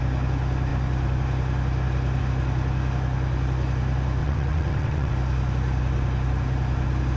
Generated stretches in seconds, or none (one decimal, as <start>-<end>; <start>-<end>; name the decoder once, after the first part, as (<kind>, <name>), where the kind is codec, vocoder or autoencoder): 4.2-5.1 (vocoder, WaveNeXt)